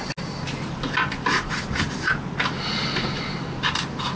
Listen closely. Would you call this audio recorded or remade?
recorded